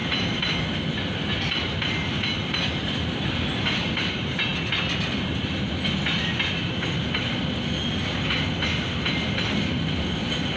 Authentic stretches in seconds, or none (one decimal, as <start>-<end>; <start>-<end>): 0.0-10.6